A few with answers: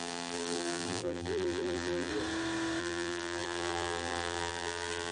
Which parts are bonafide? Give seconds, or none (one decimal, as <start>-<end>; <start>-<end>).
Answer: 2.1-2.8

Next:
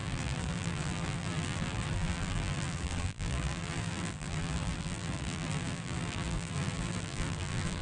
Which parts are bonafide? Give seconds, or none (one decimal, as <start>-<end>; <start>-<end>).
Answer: none

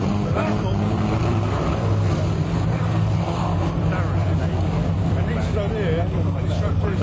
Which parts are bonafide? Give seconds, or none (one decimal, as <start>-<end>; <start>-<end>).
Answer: 0.0-1.2; 5.4-7.0

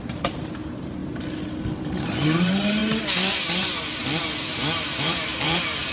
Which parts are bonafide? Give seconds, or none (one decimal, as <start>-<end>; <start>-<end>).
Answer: 1.0-1.7; 2.8-3.3; 4.0-5.0

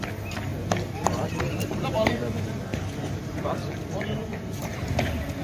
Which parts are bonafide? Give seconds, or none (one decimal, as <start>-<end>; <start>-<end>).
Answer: 0.0-0.5; 2.1-2.7; 3.8-5.4

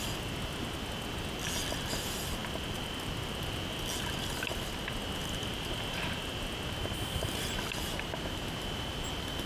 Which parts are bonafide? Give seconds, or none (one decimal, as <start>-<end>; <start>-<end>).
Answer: 0.0-5.2; 6.0-6.8; 7.6-9.5